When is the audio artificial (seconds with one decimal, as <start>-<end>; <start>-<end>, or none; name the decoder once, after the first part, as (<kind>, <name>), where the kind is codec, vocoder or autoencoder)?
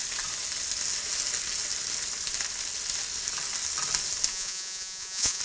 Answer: 4.3-5.4 (vocoder, Vocos)